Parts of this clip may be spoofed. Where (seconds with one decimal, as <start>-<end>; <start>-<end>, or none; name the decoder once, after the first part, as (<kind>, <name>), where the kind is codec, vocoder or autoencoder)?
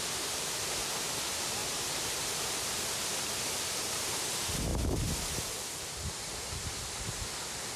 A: 0.0-1.6 (vocoder, BigVGAN v2); 3.9-4.7; 6.6-7.8